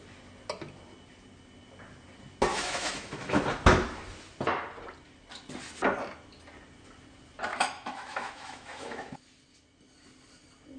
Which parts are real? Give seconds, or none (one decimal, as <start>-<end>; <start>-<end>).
0.0-2.5; 3.4-7.5; 9.1-10.8